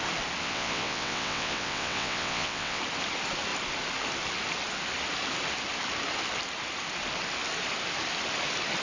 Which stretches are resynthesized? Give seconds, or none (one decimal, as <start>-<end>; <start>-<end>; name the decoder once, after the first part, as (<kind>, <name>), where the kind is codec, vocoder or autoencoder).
0.4-2.8 (vocoder, WaveNeXt)